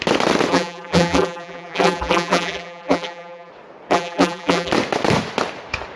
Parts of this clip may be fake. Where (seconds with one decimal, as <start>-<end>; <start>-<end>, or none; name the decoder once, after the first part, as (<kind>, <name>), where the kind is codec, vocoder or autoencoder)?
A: 0.5-3.5 (vocoder, BigVGAN v2); 3.9-4.7